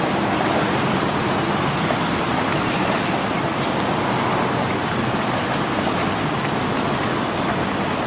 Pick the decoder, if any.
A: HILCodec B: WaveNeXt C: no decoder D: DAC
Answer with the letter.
C